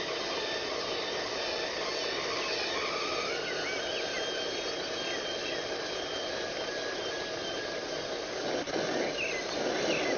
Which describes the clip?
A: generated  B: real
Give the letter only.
B